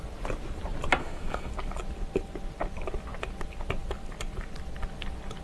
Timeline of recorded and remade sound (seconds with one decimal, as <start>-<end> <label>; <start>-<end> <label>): 0.0-1.0 recorded; 1.0-1.5 remade; 1.5-5.4 recorded